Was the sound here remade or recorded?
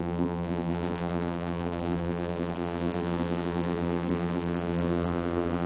remade